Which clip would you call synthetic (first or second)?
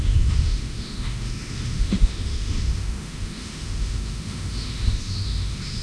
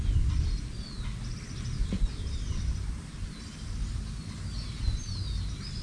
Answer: first